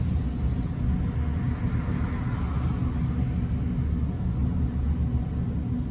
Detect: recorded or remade recorded